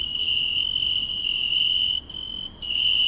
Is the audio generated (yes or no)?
no